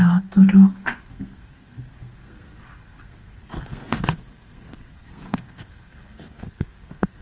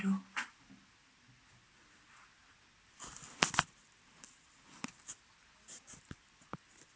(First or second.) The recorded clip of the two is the second